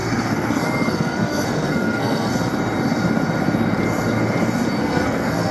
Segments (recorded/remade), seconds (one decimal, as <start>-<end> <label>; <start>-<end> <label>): 0.0-2.3 remade; 2.3-4.8 recorded; 4.8-5.5 remade